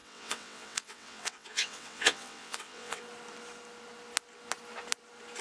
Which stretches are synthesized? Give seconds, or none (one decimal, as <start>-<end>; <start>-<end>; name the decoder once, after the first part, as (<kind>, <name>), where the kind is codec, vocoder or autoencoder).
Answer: 0.0-3.0 (vocoder, WaveNeXt)